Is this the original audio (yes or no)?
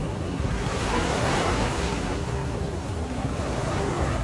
no